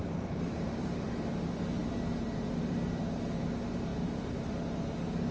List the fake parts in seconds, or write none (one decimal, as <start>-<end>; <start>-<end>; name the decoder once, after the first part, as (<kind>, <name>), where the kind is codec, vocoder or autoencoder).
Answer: 0.0-1.4 (vocoder, BigVGAN v2); 1.8-3.0; 3.9-4.4